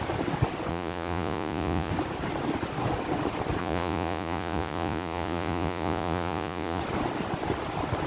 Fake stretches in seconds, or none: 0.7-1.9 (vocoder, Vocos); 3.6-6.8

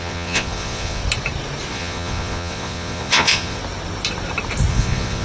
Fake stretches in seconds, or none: 0.0-1.0 (vocoder, Vocos); 1.7-3.6; 4.7-5.2

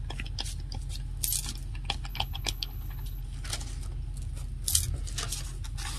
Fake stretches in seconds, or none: 2.1-3.2 (codec, HILCodec)

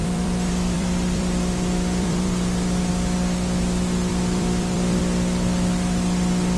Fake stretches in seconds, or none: 0.0-2.9 (vocoder, BigVGAN v2); 4.1-5.0

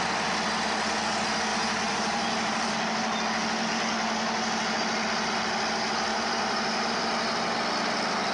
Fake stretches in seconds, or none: 1.5-2.7 (vocoder, BigVGAN v2); 6.1-7.0

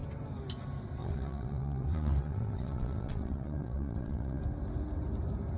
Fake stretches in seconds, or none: 1.0-4.4 (vocoder, WaveNeXt)

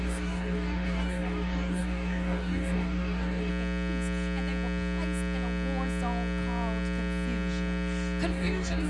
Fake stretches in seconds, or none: 0.0-3.5 (codec, DAC); 8.3-8.9